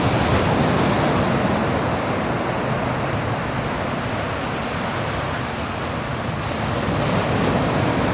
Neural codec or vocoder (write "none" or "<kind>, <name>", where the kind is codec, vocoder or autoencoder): none